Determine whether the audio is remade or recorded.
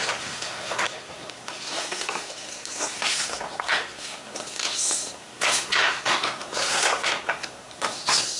remade